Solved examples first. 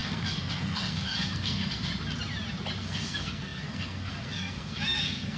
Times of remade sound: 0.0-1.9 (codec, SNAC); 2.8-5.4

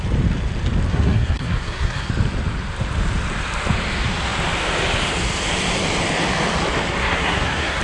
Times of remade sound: 0.9-2.1 (codec, SNAC); 7.0-7.8

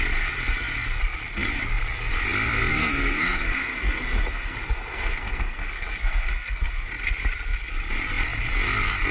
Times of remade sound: 2.7-6.9 (codec, SNAC)

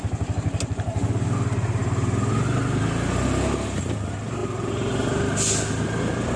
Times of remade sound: none